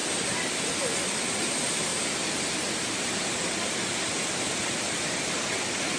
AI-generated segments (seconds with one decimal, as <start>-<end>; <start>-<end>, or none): none